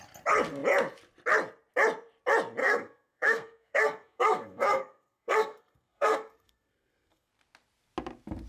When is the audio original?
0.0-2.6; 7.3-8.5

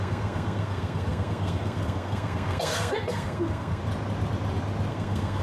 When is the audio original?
3.8-4.9

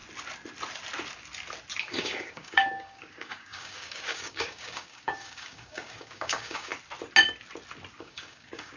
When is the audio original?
0.0-1.8; 6.7-8.0